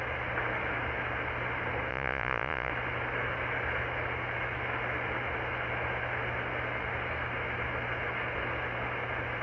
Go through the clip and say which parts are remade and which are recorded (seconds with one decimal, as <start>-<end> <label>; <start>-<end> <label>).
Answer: 0.0-1.9 recorded; 1.9-2.7 remade; 2.7-9.4 recorded